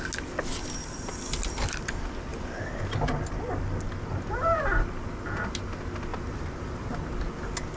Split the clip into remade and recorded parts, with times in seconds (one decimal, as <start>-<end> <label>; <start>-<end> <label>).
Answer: 0.0-6.1 recorded; 6.1-6.9 remade; 6.9-7.8 recorded